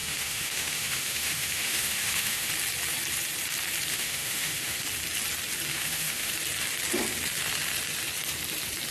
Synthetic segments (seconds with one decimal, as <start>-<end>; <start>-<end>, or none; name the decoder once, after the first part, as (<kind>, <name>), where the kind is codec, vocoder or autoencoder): 0.0-2.5 (autoencoder, DAC-VAE); 3.9-4.8; 5.7-6.3